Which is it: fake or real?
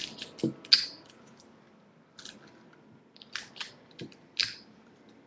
real